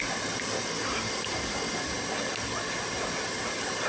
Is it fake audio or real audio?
real